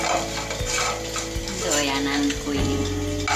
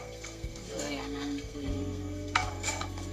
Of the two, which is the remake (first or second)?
second